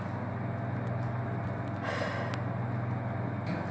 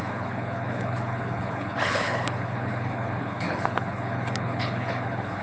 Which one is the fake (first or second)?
second